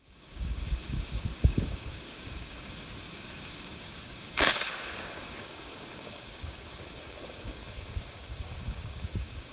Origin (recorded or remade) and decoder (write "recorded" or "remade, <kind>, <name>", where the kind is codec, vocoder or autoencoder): remade, codec, DAC